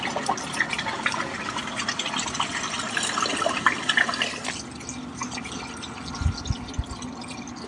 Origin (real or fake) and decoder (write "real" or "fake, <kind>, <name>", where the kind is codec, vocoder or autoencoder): real